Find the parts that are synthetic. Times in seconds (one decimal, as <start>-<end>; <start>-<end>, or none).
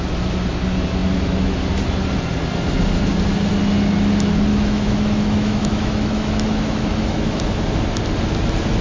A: 4.5-7.4